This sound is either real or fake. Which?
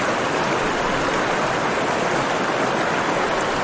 real